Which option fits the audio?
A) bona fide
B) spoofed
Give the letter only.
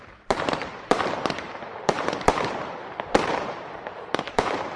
B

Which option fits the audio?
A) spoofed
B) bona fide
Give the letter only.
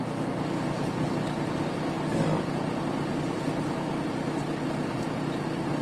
B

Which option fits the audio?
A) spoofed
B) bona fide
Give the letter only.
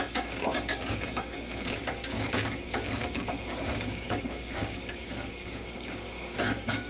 A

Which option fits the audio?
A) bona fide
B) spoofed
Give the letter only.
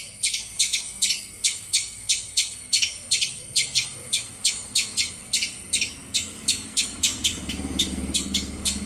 B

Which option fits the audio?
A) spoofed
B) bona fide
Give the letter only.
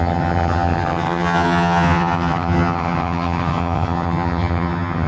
A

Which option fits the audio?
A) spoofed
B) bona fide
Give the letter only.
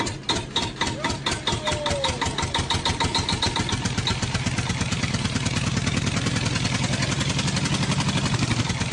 B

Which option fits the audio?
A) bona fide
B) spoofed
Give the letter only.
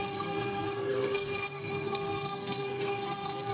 B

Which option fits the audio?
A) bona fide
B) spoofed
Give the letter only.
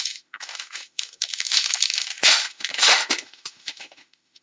B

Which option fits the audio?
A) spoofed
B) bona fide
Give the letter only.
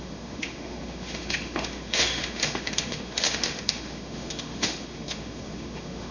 A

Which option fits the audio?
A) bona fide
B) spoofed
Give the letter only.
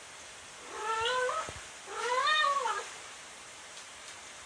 B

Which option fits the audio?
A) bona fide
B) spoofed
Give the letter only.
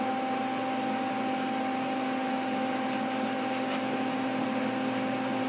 A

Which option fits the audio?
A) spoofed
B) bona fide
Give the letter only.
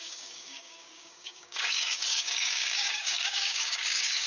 A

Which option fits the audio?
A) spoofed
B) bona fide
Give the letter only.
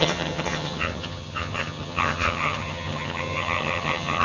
A